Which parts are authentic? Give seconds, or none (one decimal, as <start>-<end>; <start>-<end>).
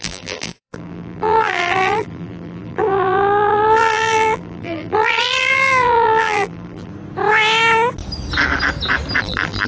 6.9-9.2